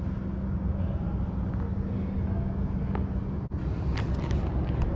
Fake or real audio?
real